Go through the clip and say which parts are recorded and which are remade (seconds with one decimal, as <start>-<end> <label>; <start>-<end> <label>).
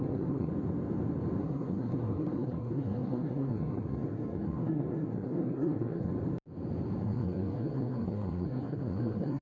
0.0-0.5 remade; 0.5-1.4 recorded; 1.4-6.1 remade; 6.1-7.0 recorded; 7.0-9.4 remade